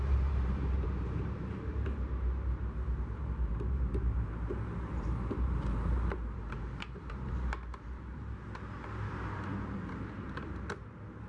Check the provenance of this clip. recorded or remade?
remade